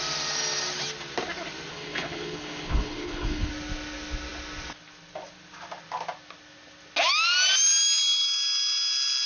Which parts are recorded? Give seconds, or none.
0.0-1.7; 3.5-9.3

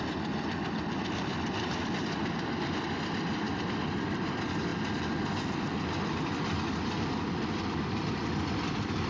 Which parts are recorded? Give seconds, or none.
1.3-1.8; 4.7-7.8

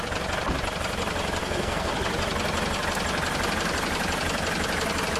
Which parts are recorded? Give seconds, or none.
0.0-1.4; 1.9-5.2

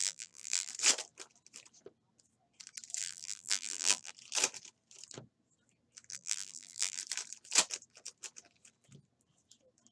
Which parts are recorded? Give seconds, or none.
0.7-3.0; 4.1-6.1; 7.0-9.9

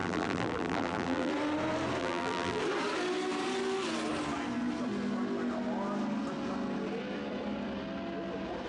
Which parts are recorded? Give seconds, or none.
1.3-2.0; 2.6-8.7

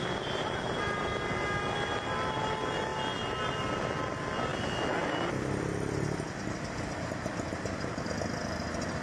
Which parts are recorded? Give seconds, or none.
0.0-9.0

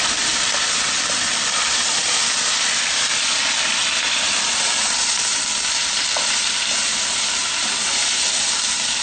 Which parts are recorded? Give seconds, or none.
0.0-9.0

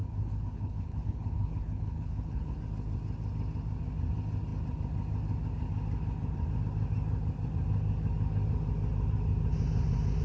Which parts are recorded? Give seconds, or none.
2.6-10.2